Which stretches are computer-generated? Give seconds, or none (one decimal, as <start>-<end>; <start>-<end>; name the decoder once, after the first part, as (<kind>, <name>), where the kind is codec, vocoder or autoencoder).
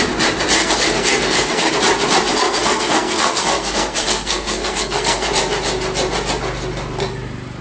0.6-1.7 (codec, SNAC); 2.3-5.3